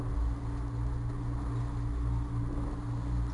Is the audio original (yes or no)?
yes